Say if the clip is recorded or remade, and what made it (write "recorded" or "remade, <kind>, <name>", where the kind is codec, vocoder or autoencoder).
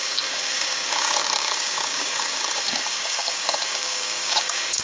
remade, codec, DAC